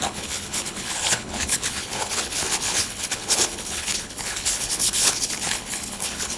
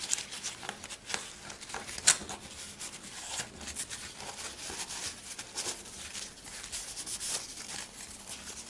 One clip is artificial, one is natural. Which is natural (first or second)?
second